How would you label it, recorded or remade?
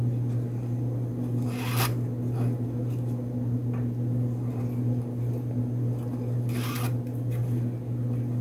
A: recorded